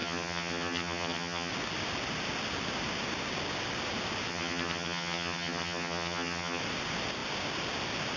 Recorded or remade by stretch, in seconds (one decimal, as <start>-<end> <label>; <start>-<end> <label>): 0.0-1.5 remade; 1.5-4.3 recorded; 4.3-6.6 remade; 6.6-8.2 recorded